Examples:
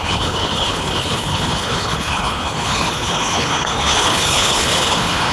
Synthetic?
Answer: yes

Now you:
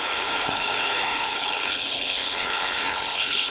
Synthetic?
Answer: yes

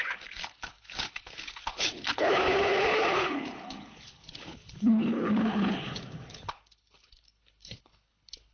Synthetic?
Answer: yes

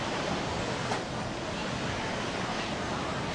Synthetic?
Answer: no